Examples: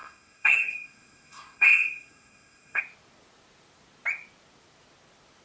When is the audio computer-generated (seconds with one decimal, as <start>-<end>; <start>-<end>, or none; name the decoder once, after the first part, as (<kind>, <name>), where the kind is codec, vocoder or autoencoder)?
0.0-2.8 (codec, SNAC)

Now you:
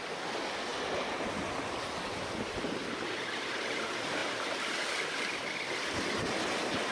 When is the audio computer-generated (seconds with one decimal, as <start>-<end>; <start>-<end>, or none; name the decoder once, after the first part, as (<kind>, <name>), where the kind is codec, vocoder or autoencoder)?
none

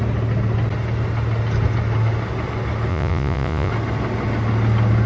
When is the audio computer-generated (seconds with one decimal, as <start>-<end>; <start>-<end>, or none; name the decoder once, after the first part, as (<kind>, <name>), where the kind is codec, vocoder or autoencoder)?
2.9-3.7 (vocoder, Vocos)

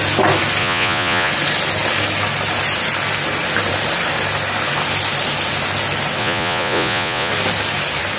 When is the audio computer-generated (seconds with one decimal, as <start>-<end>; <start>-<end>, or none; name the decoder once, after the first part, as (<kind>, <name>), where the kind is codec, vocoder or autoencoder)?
0.6-1.3 (vocoder, Vocos); 6.2-7.3

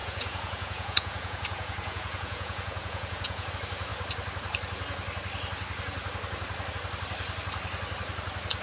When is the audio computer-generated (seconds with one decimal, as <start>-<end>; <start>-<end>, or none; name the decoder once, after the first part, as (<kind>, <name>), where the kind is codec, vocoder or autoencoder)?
0.0-3.5 (vocoder, Vocos)